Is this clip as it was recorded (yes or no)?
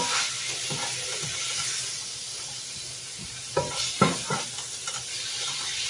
yes